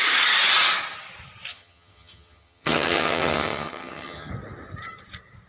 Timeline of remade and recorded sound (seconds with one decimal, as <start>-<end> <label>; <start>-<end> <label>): 0.0-1.5 recorded; 1.5-4.3 remade; 4.3-5.5 recorded